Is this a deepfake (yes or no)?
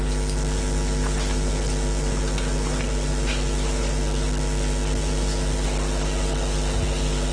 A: no